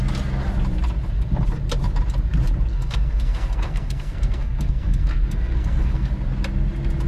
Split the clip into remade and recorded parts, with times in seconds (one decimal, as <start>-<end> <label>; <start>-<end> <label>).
0.0-2.7 recorded; 2.7-6.1 remade; 6.1-7.1 recorded